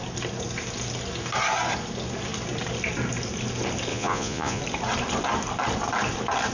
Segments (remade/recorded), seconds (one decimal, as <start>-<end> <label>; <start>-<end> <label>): 0.0-3.9 recorded; 3.9-4.6 remade; 4.6-6.5 recorded